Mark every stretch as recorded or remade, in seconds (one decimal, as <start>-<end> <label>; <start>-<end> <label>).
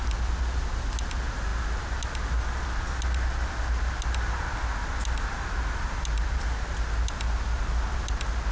0.0-8.5 recorded